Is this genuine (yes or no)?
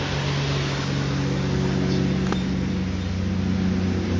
yes